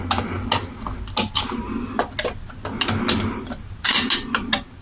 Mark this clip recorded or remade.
recorded